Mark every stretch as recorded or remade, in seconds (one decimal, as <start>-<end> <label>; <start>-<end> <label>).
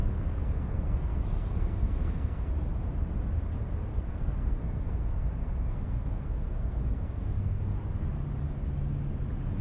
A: 0.0-2.5 remade; 2.5-3.9 recorded; 3.9-7.7 remade; 7.7-9.6 recorded